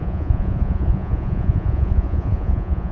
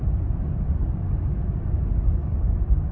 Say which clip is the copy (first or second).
first